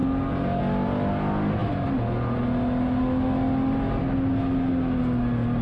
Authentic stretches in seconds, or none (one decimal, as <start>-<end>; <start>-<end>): 0.0-5.6